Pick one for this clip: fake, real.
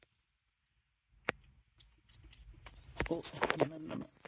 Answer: real